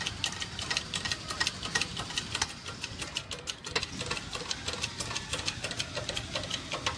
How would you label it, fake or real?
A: real